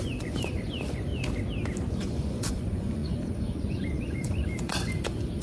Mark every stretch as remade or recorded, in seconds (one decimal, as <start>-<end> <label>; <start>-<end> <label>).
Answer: 0.0-1.1 remade; 1.1-1.9 recorded; 1.9-5.4 remade